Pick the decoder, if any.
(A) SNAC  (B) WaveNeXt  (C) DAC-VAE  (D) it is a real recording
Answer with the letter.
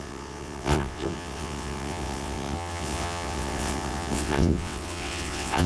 B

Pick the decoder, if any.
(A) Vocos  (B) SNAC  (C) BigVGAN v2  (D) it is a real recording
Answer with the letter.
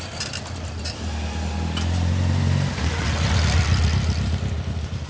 D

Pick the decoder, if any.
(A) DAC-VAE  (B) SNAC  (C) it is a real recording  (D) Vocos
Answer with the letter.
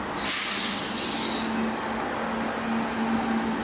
C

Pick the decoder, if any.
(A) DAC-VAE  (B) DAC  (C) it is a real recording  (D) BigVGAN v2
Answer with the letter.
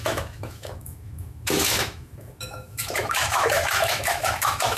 A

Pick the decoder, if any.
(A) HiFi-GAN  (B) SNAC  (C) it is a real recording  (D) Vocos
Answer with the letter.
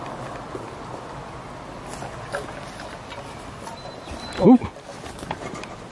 C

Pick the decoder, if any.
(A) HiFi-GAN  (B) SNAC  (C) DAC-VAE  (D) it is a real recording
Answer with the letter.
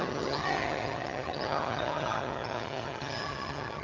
A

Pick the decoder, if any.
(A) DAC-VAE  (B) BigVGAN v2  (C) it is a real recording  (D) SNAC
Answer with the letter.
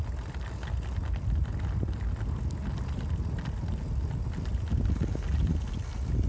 C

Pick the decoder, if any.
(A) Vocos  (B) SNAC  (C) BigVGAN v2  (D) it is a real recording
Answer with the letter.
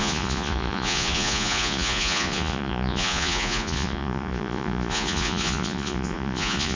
A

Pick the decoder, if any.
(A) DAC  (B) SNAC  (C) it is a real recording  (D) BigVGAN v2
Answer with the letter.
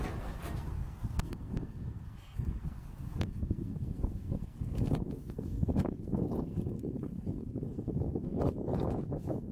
B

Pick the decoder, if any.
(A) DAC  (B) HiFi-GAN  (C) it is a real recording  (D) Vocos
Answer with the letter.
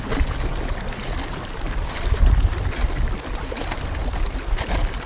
C